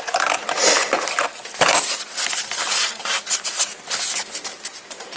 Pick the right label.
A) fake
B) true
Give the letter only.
B